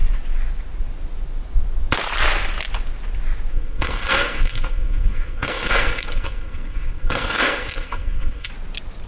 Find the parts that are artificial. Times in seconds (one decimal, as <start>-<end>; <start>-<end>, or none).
3.5-8.5